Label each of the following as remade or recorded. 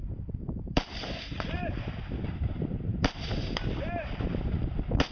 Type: remade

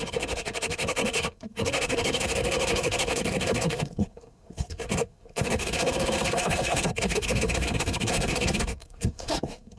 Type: remade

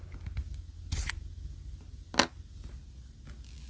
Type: recorded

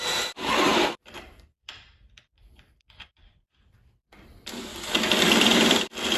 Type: remade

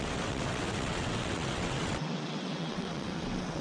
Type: remade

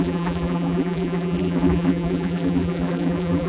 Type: remade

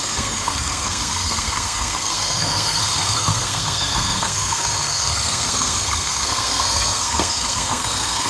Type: remade